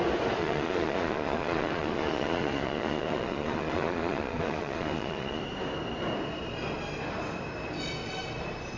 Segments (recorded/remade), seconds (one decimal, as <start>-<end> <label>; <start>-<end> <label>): 0.0-0.4 recorded; 0.4-5.4 remade; 5.4-8.8 recorded